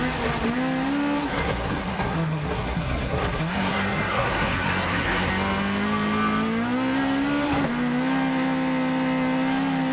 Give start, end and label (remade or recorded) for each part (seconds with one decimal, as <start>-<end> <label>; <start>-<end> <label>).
0.0-1.3 recorded; 1.3-5.3 remade; 5.3-9.9 recorded